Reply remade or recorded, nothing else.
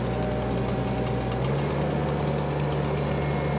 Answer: recorded